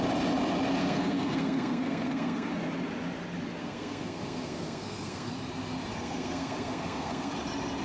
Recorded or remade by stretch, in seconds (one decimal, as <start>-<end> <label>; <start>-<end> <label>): 0.0-0.8 recorded; 0.8-2.5 remade; 2.5-3.6 recorded; 3.6-5.3 remade; 5.3-5.9 recorded; 5.9-7.3 remade; 7.3-7.8 recorded